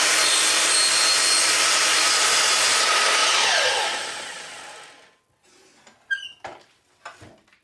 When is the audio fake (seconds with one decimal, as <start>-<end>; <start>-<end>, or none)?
none